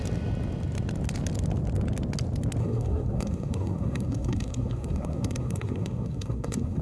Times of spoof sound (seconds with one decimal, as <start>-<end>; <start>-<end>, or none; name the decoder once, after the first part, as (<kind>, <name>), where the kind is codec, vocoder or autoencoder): 2.6-6.8 (codec, SNAC)